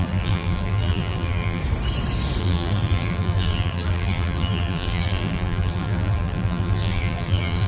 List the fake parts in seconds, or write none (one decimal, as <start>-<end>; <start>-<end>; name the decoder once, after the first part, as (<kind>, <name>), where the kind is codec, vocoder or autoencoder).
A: 0.0-1.6 (vocoder, BigVGAN v2); 2.4-7.7